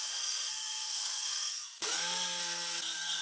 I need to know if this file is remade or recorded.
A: remade